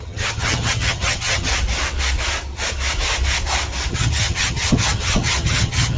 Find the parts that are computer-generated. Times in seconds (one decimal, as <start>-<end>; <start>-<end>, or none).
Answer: 0.0-1.5; 3.9-6.0